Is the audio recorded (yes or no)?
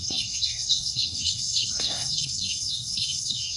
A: no